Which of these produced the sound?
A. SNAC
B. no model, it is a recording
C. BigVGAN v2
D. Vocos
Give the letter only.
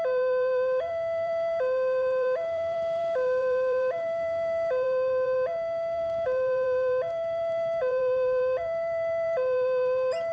C